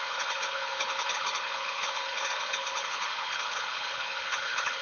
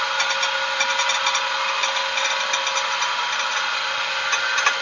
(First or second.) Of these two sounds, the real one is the second